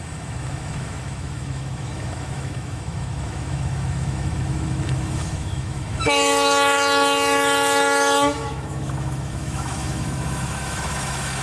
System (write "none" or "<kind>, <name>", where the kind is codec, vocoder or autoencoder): autoencoder, DAC-VAE